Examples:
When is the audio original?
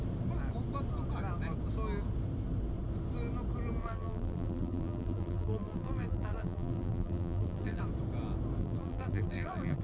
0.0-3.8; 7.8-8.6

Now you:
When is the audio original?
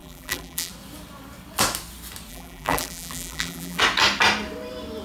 0.7-2.3; 3.8-5.0